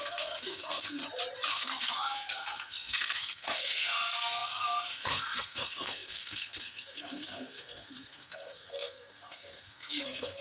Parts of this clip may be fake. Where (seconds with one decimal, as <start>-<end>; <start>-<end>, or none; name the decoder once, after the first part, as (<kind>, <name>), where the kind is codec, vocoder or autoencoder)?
0.0-1.0 (codec, SNAC); 1.5-10.4